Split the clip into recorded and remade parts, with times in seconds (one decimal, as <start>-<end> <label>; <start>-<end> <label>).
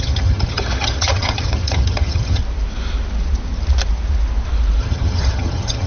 0.0-2.4 remade; 2.4-4.8 recorded; 4.8-5.9 remade